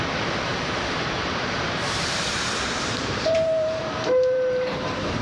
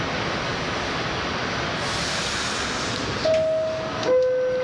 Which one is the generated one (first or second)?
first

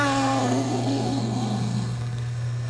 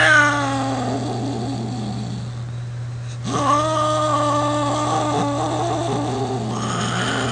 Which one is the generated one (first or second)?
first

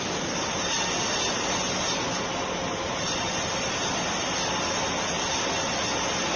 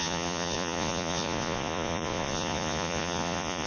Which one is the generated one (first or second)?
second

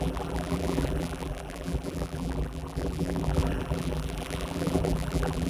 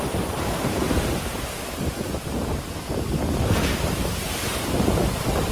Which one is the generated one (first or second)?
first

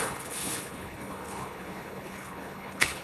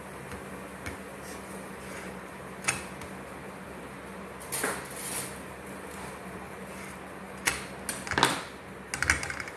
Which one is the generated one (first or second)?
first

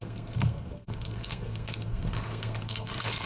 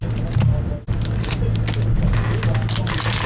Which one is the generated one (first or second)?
first